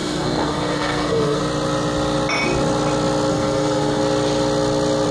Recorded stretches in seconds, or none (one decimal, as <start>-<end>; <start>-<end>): 1.4-3.3; 4.0-5.1